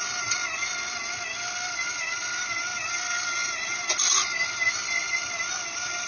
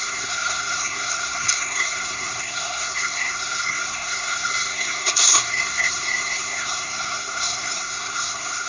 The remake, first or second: second